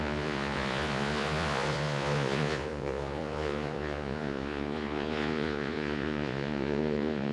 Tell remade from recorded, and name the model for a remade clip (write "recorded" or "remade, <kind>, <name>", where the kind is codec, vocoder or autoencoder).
remade, vocoder, Vocos